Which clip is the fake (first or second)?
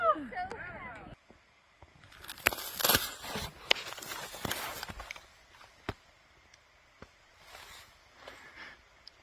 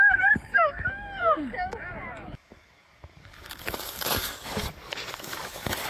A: second